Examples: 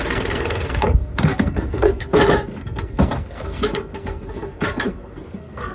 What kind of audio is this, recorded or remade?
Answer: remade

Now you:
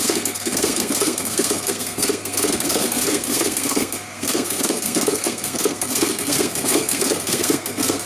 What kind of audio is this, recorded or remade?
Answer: remade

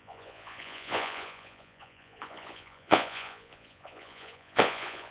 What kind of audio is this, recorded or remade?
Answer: remade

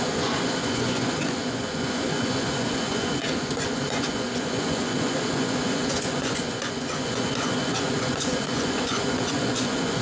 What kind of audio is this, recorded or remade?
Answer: remade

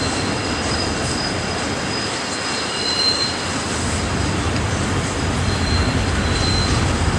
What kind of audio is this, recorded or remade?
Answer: recorded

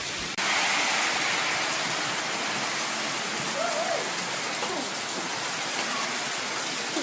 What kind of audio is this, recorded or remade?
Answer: recorded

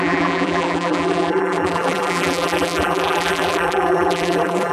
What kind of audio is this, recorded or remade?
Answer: remade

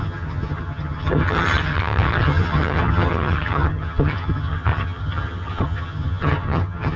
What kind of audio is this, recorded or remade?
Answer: remade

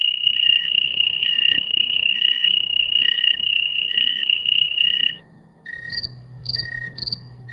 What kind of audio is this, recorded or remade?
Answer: remade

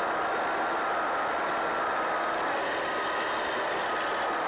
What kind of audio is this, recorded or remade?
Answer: recorded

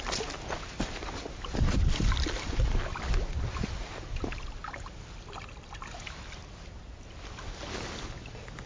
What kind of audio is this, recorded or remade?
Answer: recorded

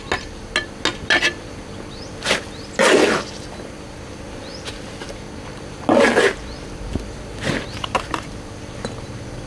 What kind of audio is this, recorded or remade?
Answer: recorded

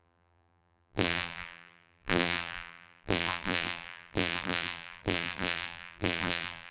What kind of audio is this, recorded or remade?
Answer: remade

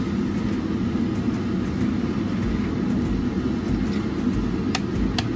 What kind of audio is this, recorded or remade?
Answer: recorded